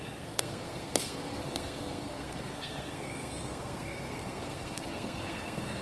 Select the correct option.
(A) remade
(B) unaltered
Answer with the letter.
A